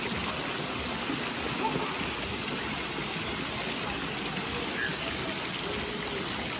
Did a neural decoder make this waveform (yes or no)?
no